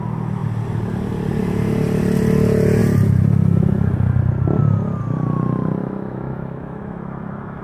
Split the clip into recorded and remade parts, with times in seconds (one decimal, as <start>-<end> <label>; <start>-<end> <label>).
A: 0.0-5.8 recorded; 5.8-7.6 remade